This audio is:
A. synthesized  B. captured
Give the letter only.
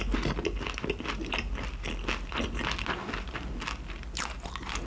B